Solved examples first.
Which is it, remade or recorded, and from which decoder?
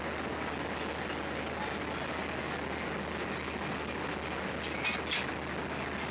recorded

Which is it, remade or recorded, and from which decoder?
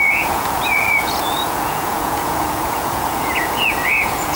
remade, vocoder, Vocos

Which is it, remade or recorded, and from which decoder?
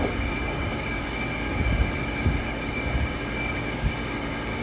remade, codec, DAC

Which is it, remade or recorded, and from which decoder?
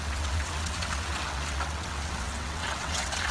remade, vocoder, WaveNeXt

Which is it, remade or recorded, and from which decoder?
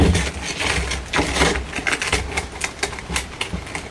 recorded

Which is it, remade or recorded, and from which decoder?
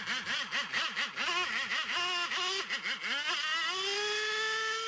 recorded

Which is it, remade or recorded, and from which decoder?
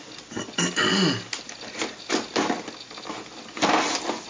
recorded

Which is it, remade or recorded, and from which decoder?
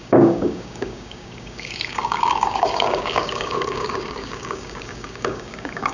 remade, codec, DAC